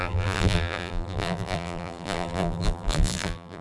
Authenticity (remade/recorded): remade